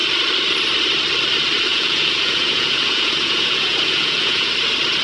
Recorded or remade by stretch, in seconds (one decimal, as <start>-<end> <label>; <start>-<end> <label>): 0.0-1.7 recorded; 1.7-4.5 remade; 4.5-5.0 recorded